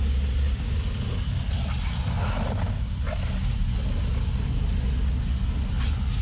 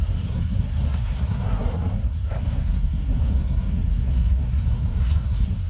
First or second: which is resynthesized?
second